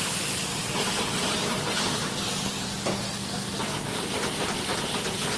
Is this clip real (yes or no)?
yes